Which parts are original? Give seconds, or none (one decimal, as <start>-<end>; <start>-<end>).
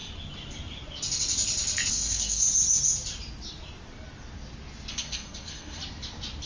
0.0-1.9; 2.4-4.9; 5.8-6.5